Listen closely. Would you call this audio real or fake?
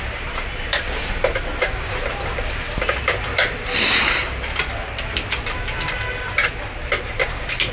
fake